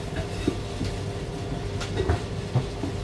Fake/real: real